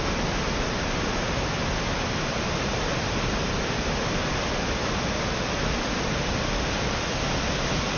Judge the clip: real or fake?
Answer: real